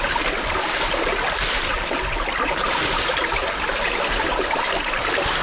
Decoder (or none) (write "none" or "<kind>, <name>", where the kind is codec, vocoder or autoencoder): none